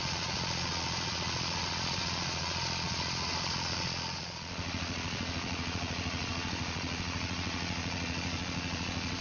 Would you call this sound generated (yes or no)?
yes